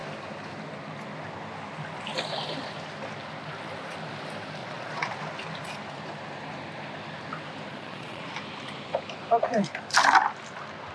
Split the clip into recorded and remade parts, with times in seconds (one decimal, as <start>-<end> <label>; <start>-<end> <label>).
0.0-4.6 recorded; 4.6-5.1 remade; 5.1-7.7 recorded; 7.7-8.2 remade; 8.2-10.9 recorded